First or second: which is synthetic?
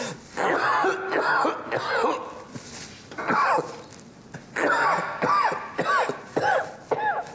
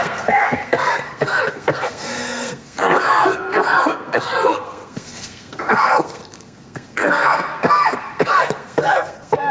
second